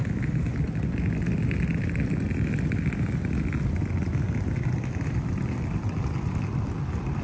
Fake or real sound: real